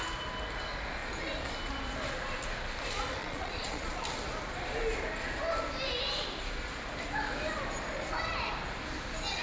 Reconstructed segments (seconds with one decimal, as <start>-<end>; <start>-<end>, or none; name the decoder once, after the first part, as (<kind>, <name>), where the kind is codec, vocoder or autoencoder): 3.2-3.9 (vocoder, Vocos)